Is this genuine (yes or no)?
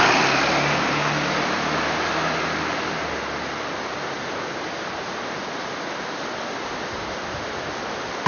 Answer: yes